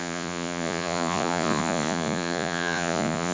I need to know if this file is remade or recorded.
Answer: remade